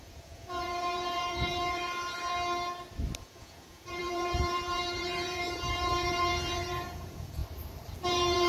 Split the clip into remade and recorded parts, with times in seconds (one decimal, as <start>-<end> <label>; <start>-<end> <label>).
0.0-2.3 remade; 2.3-3.2 recorded; 3.2-7.4 remade; 7.4-8.1 recorded; 8.1-8.5 remade